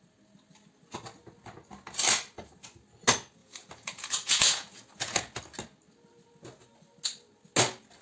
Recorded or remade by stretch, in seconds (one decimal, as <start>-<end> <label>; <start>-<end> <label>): 0.0-3.4 recorded; 3.4-5.4 remade; 5.4-8.0 recorded